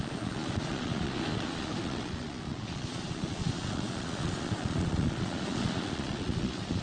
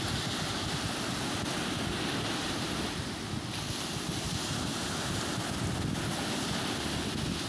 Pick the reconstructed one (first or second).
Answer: first